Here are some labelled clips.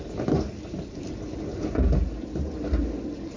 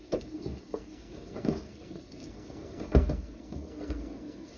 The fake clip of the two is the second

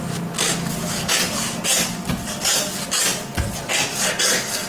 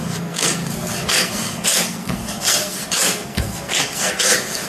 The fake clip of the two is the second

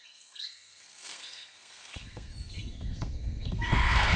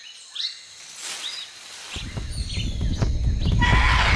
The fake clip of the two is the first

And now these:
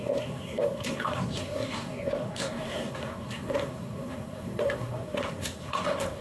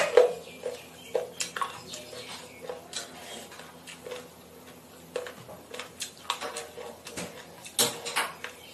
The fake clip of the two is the first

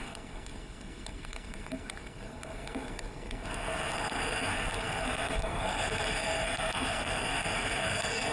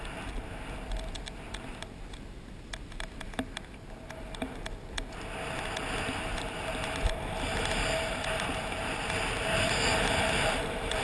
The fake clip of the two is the first